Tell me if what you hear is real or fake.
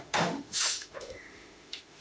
fake